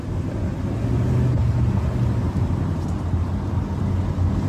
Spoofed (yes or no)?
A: no